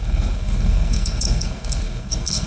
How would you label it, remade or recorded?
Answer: remade